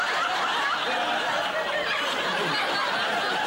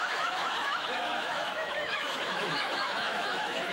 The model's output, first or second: second